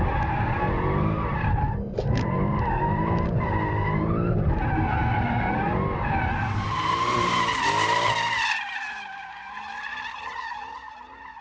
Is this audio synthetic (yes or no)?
no